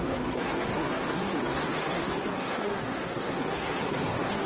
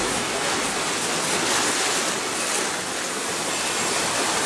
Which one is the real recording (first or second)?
second